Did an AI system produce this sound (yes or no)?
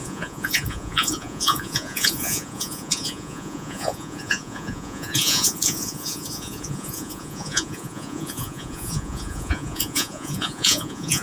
yes